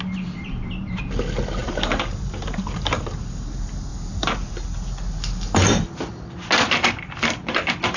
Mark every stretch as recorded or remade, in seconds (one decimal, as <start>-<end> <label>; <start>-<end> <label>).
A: 0.0-1.6 recorded; 1.6-3.0 remade; 3.0-3.9 recorded; 3.9-4.5 remade; 4.5-8.0 recorded

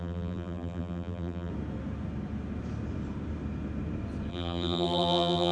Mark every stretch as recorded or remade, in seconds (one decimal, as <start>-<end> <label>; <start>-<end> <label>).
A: 0.0-1.5 remade; 1.5-4.3 recorded; 4.3-5.5 remade

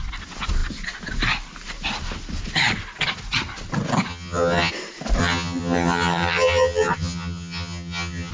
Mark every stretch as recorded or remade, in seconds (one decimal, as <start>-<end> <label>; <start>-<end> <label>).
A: 0.0-4.1 recorded; 4.1-4.7 remade; 4.7-5.2 recorded; 5.2-8.3 remade

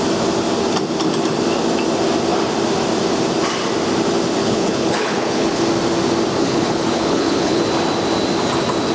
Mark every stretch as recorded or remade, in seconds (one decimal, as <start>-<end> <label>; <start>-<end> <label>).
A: 0.0-4.4 recorded; 4.4-5.6 remade; 5.6-6.4 recorded; 6.4-7.6 remade; 7.6-8.9 recorded

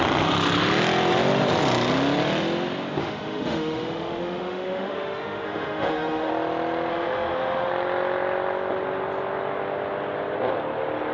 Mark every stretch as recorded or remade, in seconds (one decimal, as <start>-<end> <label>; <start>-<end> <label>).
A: 0.0-3.0 recorded; 3.0-6.3 remade; 6.3-6.9 recorded; 6.9-7.7 remade; 7.7-11.1 recorded